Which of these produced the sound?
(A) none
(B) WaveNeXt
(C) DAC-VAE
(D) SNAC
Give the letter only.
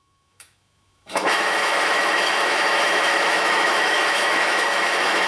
C